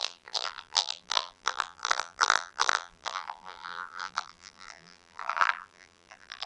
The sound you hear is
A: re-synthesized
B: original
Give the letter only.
A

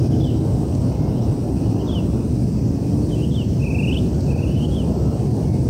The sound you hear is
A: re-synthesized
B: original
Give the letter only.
B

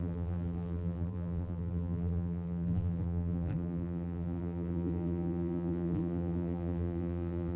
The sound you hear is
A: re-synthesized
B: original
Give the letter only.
A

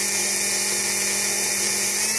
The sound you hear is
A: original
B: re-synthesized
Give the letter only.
A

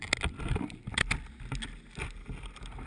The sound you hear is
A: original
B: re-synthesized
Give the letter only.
A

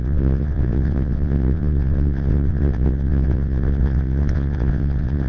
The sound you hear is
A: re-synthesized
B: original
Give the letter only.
A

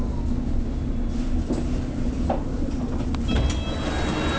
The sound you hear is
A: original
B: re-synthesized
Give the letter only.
A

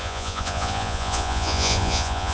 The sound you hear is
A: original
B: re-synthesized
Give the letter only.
B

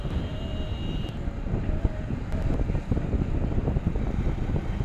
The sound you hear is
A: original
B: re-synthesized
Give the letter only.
A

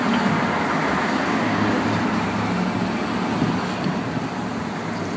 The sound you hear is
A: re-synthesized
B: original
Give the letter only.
B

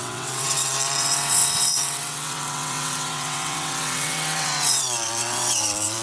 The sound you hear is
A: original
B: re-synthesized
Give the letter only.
B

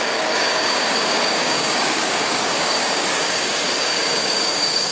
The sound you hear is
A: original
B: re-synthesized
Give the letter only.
B